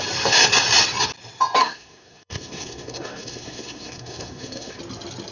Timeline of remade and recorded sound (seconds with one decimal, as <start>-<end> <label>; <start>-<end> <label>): 0.0-1.6 recorded; 1.6-4.8 remade; 4.8-5.3 recorded